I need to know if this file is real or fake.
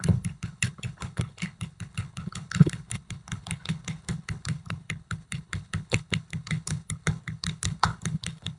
fake